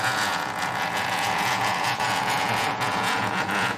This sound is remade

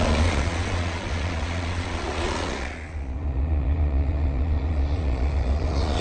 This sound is remade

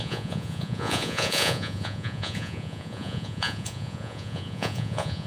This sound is remade